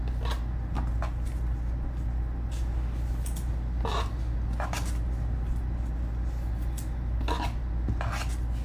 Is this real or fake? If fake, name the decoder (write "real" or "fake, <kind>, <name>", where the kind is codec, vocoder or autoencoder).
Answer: real